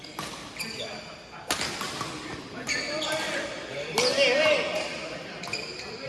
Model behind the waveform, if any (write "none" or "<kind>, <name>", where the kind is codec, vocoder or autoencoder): none